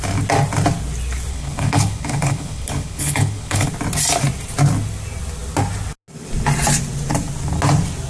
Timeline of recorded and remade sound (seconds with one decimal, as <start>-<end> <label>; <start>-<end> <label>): 0.0-1.3 recorded; 1.3-3.7 remade; 3.7-8.1 recorded